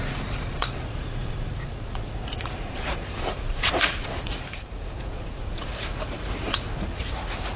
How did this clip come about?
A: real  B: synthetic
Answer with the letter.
B